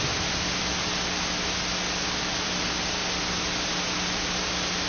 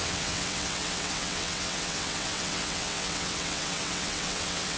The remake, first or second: second